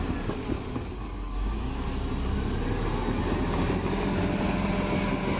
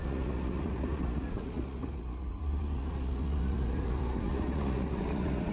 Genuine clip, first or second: first